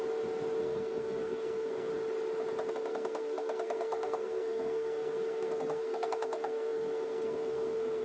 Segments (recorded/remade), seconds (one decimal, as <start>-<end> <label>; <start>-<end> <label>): 0.0-0.6 recorded; 0.6-1.9 remade; 1.9-2.7 recorded; 2.7-8.0 remade